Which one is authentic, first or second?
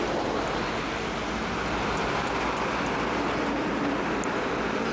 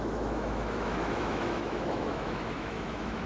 first